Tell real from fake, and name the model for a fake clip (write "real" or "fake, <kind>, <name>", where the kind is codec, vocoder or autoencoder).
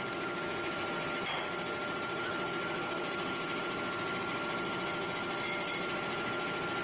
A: real